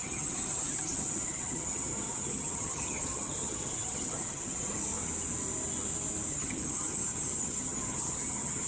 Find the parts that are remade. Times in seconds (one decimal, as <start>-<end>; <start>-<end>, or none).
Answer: 0.0-4.9; 6.3-8.7